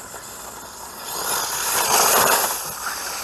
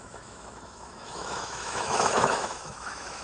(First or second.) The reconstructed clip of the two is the second